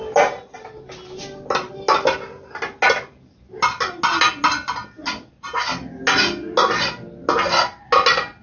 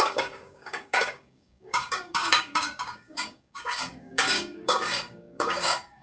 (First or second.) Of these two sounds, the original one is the first